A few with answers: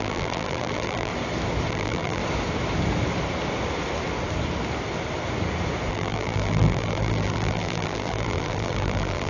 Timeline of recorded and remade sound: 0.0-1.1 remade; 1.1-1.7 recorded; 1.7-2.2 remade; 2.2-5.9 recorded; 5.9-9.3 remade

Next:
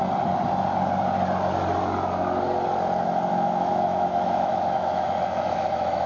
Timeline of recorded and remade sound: 0.0-3.3 recorded; 3.3-6.1 remade

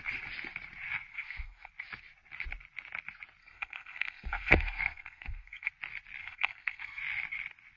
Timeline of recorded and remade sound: 0.0-1.1 recorded; 1.1-1.7 remade; 1.7-3.4 recorded; 3.4-5.7 remade; 5.7-6.2 recorded; 6.2-7.0 remade; 7.0-7.8 recorded

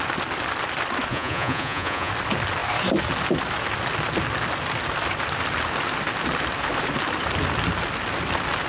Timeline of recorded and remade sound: 0.0-1.1 recorded; 1.1-2.1 remade; 2.1-8.7 recorded

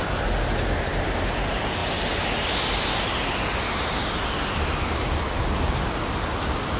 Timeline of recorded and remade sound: 0.0-6.8 recorded